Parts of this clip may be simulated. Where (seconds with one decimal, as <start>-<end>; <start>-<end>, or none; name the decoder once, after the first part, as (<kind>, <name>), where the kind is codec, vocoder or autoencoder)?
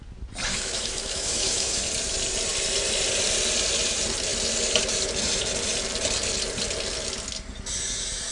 0.5-1.8 (autoencoder, DAC-VAE)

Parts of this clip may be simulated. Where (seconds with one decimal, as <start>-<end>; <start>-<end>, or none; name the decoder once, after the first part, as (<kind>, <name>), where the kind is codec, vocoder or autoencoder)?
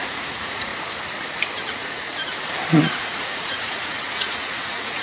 0.0-0.7 (vocoder, Vocos); 1.7-2.3; 2.8-5.0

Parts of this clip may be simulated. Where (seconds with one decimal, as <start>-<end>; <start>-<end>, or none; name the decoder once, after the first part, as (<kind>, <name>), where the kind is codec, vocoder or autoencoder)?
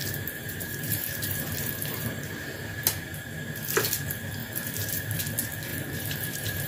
0.0-2.8 (vocoder, BigVGAN v2); 4.4-5.2; 5.7-6.7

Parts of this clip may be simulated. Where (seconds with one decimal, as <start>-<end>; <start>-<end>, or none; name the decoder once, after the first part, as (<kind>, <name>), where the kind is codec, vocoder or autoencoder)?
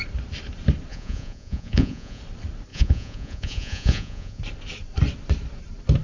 0.9-2.2 (vocoder, Vocos); 2.7-4.4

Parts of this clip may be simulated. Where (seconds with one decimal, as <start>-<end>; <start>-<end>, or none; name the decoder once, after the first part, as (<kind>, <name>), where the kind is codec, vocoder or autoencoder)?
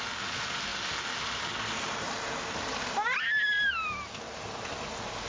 none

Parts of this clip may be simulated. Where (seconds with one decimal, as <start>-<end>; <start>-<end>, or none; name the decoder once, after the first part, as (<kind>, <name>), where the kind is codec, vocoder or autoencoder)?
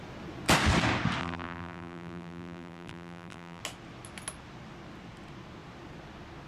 1.2-3.6 (vocoder, BigVGAN v2)